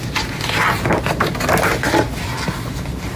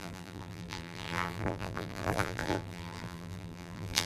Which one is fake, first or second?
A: second